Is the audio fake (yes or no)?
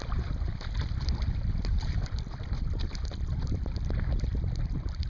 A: no